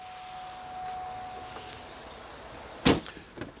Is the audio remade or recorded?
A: recorded